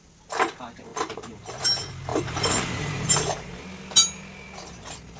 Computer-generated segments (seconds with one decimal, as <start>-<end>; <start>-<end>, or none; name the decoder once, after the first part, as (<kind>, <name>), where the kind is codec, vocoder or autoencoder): 0.9-1.6 (vocoder, BigVGAN v2); 2.1-3.6